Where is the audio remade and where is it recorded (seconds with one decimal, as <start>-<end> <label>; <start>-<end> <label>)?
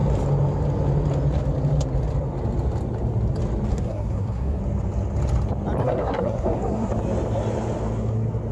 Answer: 0.0-3.7 recorded; 3.7-4.6 remade; 4.6-5.8 recorded; 5.8-6.9 remade; 6.9-8.5 recorded